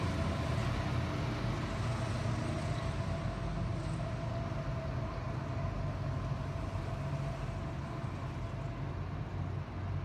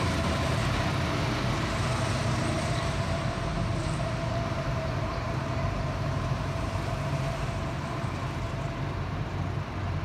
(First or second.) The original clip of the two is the first